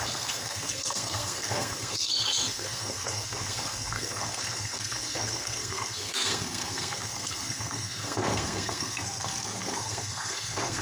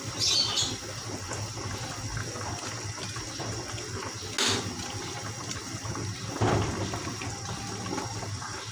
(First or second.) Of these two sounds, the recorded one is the second